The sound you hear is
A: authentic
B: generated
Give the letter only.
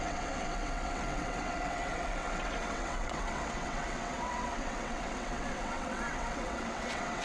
B